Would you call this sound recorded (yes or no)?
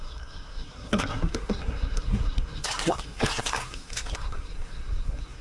no